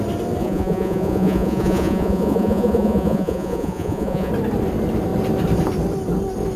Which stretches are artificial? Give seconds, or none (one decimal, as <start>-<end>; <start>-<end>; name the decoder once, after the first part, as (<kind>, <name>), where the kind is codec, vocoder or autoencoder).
0.4-4.3 (vocoder, Vocos)